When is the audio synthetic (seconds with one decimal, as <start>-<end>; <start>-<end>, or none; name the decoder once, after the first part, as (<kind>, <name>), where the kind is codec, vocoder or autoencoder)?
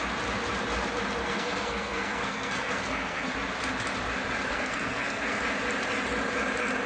1.2-3.3 (codec, SNAC); 4.5-5.4